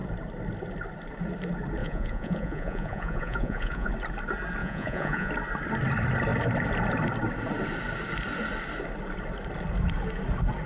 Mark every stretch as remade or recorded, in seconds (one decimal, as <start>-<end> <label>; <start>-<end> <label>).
0.0-1.8 recorded; 1.8-3.9 remade; 3.9-4.6 recorded; 4.6-5.3 remade; 5.3-10.7 recorded